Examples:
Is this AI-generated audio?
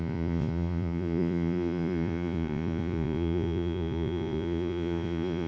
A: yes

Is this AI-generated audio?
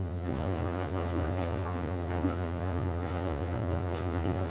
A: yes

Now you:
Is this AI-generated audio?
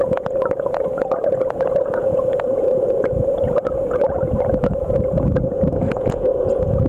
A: yes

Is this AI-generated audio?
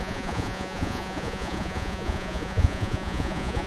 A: yes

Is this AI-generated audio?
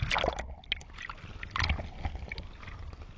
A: no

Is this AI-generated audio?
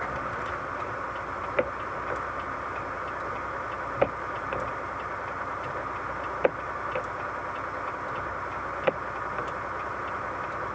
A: no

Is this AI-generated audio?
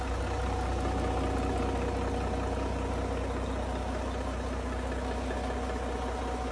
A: no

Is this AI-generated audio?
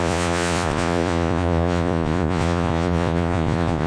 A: yes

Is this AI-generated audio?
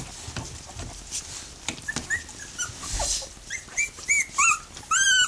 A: no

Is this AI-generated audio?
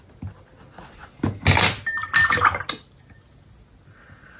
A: no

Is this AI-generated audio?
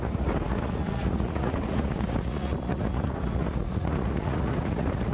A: yes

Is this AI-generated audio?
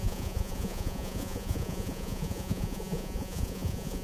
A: yes